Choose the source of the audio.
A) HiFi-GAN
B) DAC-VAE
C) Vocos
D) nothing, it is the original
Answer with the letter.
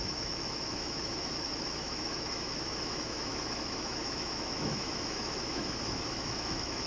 B